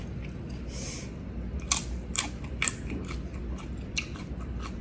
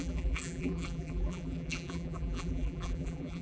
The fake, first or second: second